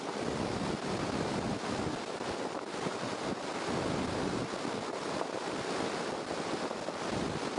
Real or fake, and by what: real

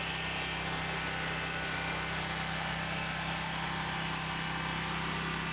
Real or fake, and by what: real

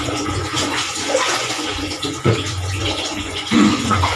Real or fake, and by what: fake, vocoder, Vocos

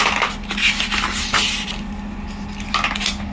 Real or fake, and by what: real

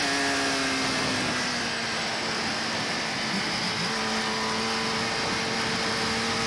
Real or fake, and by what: real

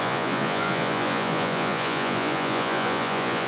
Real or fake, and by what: fake, vocoder, Vocos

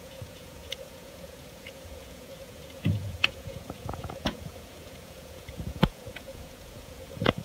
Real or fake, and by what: fake, vocoder, Vocos